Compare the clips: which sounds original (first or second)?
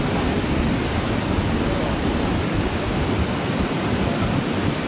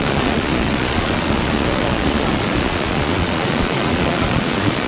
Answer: first